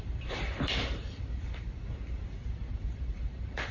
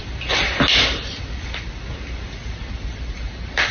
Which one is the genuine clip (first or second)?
second